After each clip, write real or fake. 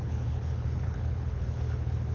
fake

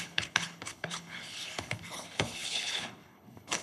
fake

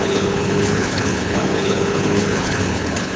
fake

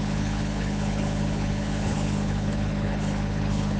fake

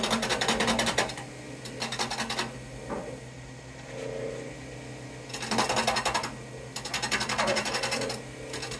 real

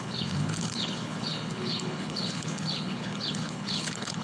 fake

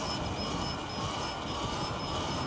real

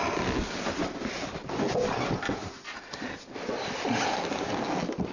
real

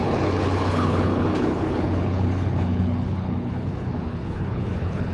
fake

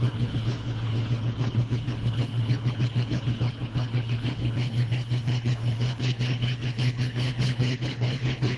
fake